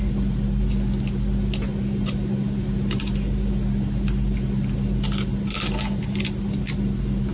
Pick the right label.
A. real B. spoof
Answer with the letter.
A